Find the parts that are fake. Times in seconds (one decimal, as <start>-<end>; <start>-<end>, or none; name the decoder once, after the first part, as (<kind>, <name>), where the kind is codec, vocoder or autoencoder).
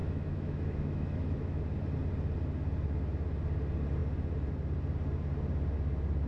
0.0-1.6 (autoencoder, DAC-VAE)